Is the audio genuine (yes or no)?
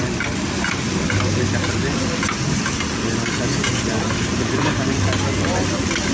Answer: yes